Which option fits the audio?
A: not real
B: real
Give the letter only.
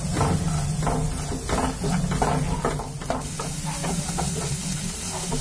B